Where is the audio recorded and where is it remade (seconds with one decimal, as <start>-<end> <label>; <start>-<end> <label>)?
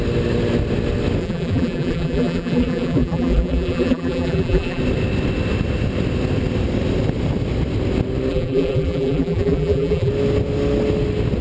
0.0-1.2 recorded; 1.2-4.8 remade; 4.8-8.3 recorded; 8.3-10.1 remade; 10.1-11.4 recorded